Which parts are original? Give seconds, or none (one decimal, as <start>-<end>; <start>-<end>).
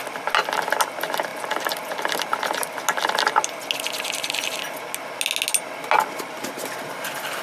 0.0-7.4